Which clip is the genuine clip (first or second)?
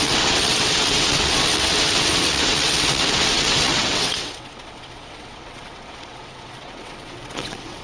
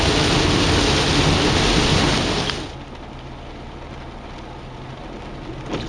second